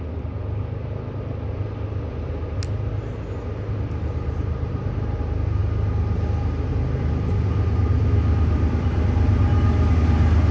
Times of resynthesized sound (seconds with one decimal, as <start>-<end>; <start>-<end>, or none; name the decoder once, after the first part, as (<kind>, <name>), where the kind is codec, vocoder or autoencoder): none